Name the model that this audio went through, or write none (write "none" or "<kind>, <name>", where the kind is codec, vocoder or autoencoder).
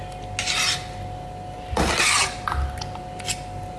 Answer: none